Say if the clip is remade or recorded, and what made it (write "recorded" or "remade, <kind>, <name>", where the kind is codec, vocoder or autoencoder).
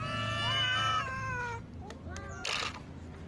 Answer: recorded